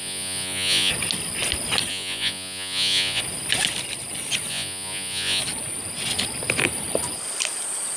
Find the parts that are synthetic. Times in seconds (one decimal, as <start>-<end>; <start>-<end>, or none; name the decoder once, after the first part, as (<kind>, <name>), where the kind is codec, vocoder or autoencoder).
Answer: 0.0-0.9 (vocoder, Vocos); 1.9-3.2; 4.5-5.4